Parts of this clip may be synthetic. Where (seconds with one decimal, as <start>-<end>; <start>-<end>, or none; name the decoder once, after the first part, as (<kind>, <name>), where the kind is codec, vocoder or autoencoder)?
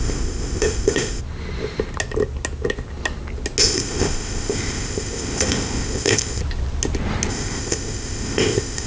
0.0-1.2 (codec, ZipCodec); 3.6-6.4; 7.3-8.9